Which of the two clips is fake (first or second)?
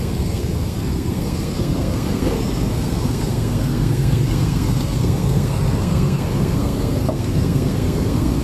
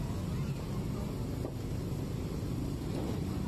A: first